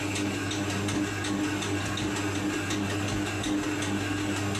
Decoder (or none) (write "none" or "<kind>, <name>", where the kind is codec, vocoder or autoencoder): none